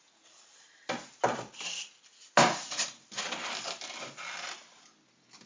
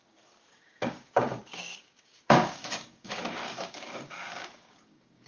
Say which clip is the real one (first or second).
first